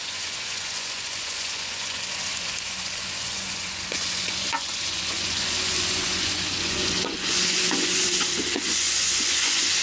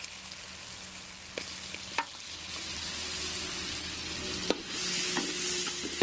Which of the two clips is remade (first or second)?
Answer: first